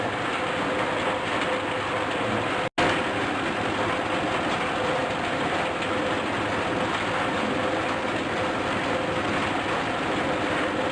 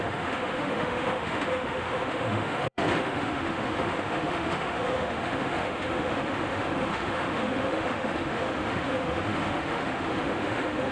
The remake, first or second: second